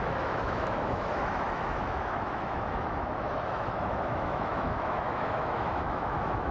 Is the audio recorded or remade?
remade